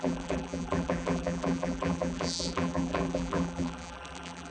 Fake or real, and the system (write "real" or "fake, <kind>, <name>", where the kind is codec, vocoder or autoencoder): fake, vocoder, BigVGAN v2